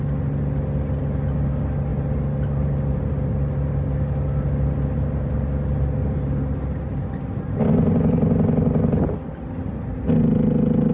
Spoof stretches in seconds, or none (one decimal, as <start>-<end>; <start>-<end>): none